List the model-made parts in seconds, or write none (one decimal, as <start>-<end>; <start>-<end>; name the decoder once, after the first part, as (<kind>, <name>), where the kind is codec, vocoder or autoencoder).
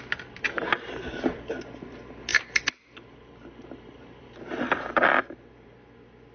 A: 2.3-5.5 (vocoder, BigVGAN v2)